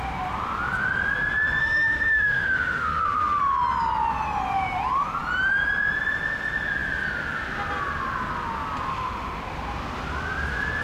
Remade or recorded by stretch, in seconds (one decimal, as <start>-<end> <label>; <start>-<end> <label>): 0.0-1.6 recorded; 1.6-3.4 remade; 3.4-8.9 recorded; 8.9-9.4 remade; 9.4-10.8 recorded